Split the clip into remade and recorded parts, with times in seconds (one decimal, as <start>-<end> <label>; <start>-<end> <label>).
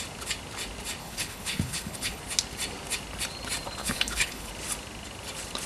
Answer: 0.0-1.0 recorded; 1.0-2.2 remade; 2.2-3.8 recorded; 3.8-4.5 remade; 4.5-5.7 recorded